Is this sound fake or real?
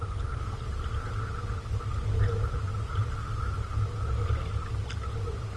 real